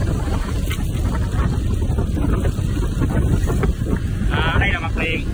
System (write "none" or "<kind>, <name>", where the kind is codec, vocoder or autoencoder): none